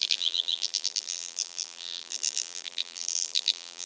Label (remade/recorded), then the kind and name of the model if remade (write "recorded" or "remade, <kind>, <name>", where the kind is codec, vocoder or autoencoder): remade, vocoder, BigVGAN v2